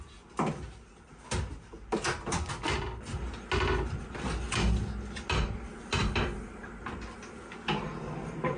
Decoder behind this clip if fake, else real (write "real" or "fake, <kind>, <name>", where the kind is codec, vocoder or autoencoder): real